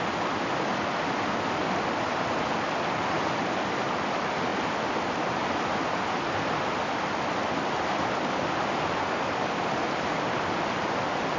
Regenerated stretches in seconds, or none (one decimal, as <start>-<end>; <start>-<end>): none

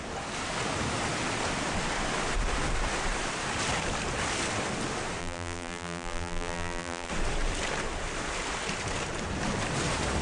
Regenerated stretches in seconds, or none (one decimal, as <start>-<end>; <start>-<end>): 5.2-7.1

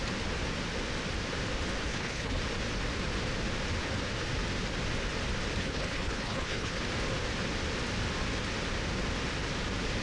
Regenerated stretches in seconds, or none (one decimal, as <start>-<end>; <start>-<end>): 1.9-2.4; 5.6-6.8

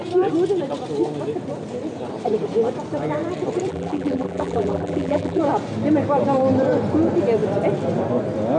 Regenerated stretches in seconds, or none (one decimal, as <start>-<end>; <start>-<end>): 3.7-5.4

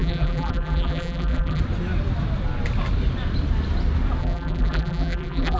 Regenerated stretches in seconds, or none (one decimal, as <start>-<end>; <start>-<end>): 0.0-1.6; 4.2-5.6

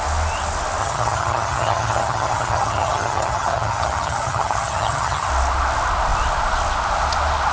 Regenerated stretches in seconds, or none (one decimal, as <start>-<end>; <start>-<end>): 0.8-5.3

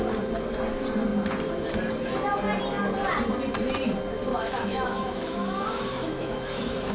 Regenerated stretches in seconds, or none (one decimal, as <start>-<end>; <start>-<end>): 4.3-6.9

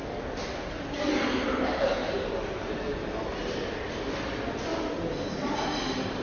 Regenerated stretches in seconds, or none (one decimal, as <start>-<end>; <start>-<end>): 2.0-3.9